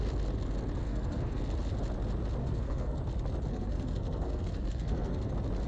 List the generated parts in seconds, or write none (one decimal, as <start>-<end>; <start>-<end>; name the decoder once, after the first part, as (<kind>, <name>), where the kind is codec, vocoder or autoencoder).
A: 0.8-1.4 (codec, SNAC); 2.4-3.0; 3.5-5.3